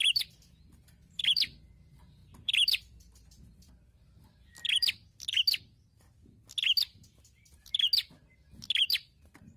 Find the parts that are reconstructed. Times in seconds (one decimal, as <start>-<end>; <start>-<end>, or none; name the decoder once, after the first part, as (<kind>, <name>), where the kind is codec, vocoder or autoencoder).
0.0-5.0 (vocoder, BigVGAN v2); 8.6-9.6